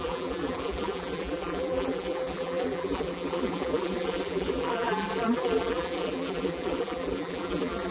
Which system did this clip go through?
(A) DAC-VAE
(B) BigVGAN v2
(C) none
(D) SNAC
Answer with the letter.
B